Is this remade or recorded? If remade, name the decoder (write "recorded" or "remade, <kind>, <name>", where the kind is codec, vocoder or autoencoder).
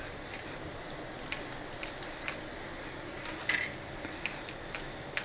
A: recorded